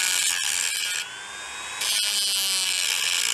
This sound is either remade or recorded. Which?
recorded